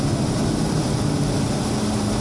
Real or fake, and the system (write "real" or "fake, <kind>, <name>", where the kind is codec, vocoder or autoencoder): real